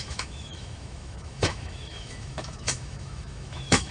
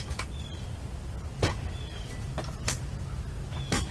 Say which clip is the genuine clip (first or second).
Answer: second